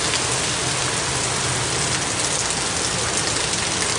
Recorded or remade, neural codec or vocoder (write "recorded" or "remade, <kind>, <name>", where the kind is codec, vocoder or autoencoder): recorded